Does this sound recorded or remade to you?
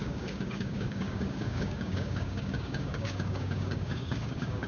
remade